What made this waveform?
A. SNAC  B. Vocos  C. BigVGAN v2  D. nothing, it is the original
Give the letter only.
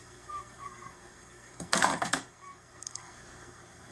A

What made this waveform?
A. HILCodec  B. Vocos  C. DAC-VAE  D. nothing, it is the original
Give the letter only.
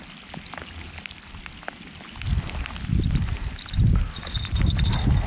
D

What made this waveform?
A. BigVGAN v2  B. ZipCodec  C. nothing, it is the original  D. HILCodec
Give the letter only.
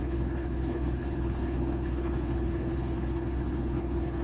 D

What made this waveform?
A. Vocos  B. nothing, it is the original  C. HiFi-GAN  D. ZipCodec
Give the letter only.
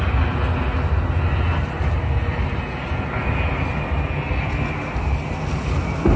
B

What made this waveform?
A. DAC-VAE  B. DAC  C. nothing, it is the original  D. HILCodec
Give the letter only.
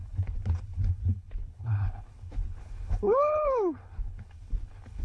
D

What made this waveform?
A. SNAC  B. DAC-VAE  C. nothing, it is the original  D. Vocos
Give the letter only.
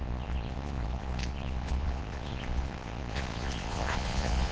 D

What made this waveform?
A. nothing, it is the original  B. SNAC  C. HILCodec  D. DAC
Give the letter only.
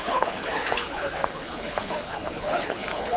C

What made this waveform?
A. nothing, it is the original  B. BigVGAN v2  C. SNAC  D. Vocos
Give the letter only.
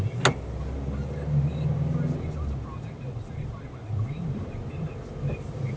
A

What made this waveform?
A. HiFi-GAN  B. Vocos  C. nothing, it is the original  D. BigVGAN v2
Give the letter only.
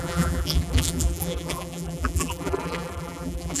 D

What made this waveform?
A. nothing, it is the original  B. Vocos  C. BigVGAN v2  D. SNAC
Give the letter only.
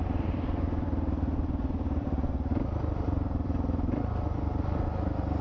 C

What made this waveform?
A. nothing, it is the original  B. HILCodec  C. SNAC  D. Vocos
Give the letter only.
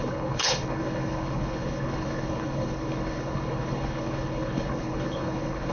B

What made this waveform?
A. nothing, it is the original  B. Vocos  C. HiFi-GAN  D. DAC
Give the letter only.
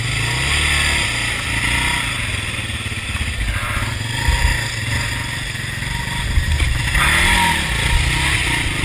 A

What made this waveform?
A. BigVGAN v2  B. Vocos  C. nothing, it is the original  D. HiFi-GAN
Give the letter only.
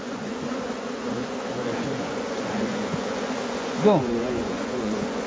B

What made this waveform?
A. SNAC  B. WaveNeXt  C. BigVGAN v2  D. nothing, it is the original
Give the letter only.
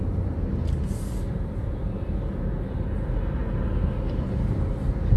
D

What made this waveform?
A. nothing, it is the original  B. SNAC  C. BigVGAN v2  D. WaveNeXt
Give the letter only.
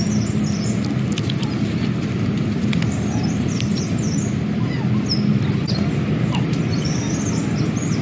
A